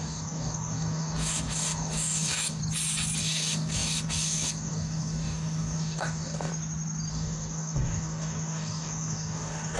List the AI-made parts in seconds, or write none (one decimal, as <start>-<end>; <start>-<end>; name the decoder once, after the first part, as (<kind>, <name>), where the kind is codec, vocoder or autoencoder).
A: 0.0-2.6 (codec, DAC); 3.2-6.5; 7.1-9.8